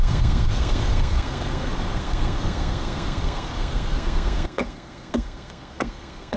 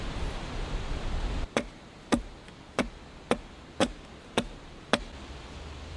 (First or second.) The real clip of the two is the second